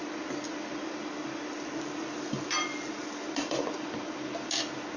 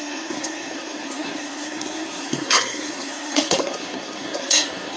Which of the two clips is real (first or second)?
first